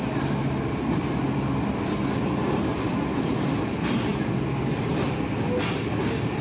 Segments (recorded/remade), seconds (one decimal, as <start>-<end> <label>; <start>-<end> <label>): 0.0-6.4 recorded